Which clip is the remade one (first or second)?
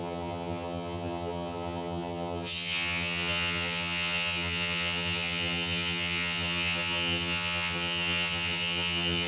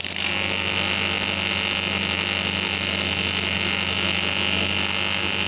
first